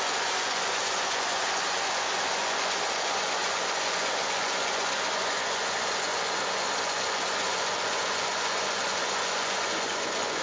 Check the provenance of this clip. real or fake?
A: fake